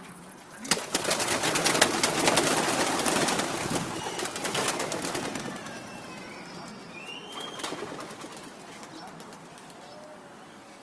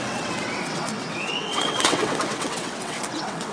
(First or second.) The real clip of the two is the first